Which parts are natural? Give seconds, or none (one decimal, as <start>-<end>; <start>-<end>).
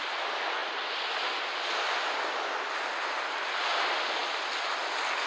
0.0-5.3